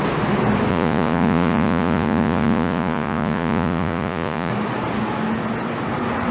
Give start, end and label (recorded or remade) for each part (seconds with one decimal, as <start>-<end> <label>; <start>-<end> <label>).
0.0-0.7 recorded; 0.7-4.5 remade; 4.5-6.3 recorded